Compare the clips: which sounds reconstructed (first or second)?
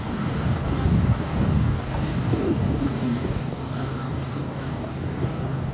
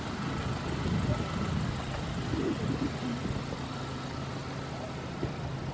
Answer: first